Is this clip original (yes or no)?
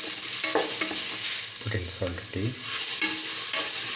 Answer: yes